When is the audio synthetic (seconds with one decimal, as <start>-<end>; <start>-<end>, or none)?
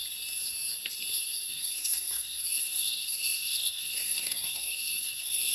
1.2-5.5